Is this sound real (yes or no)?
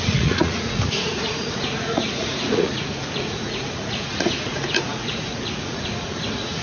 no